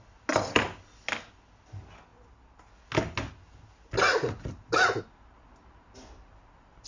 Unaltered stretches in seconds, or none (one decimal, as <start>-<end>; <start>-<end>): 0.0-6.9